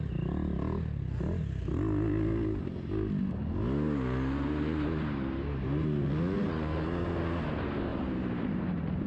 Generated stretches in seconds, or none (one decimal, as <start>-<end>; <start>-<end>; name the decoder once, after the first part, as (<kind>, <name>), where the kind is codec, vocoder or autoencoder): 7.9-9.1 (vocoder, BigVGAN v2)